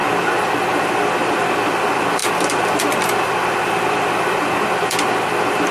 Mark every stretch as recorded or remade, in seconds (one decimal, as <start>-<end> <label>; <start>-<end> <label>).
0.0-0.8 recorded; 0.8-5.7 remade